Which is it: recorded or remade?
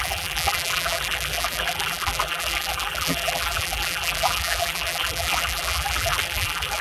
remade